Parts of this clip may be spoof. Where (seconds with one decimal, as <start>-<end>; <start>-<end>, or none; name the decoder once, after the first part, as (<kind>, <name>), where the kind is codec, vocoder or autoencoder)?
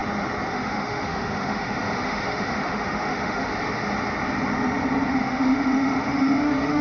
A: 0.5-3.5 (autoencoder, DAC-VAE); 5.1-6.8